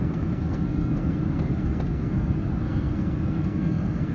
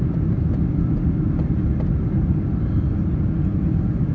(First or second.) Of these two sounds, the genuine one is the second